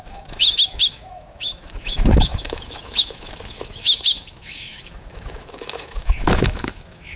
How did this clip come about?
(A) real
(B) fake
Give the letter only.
B